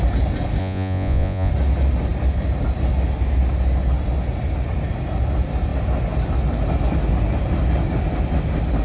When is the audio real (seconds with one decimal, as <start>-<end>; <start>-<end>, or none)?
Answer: 0.0-0.6; 1.5-8.8